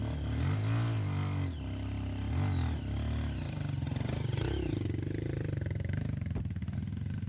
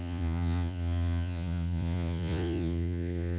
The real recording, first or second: first